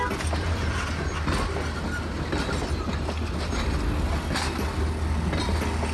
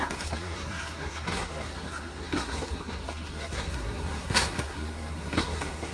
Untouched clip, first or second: first